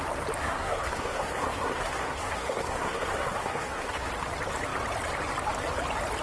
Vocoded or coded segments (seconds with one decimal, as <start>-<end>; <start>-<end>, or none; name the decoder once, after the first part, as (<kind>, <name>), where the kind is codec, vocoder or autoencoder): 0.4-4.1 (codec, SNAC)